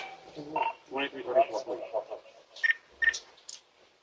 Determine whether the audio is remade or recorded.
recorded